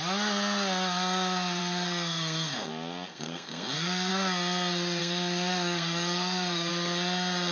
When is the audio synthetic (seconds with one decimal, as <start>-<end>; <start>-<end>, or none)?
1.6-2.7; 3.1-4.1; 5.0-6.7